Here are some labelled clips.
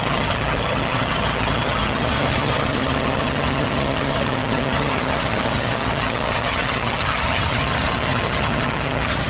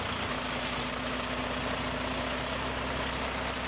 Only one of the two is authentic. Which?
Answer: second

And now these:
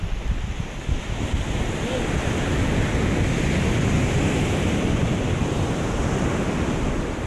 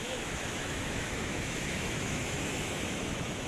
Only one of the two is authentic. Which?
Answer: first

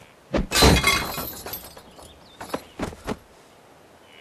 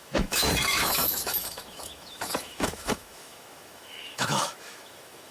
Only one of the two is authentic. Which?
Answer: first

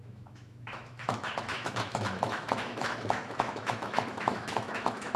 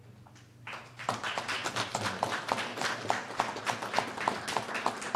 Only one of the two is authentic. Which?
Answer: second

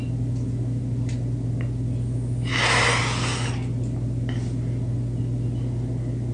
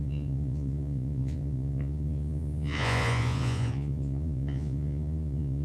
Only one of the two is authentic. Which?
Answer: first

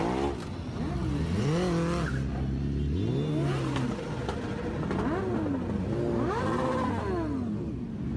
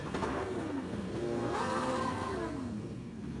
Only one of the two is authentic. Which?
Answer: first